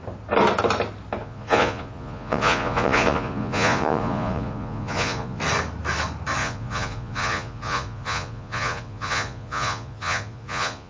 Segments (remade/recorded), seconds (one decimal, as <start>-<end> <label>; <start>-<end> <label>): 0.0-1.2 recorded; 1.2-5.4 remade; 5.4-6.4 recorded; 6.4-10.9 remade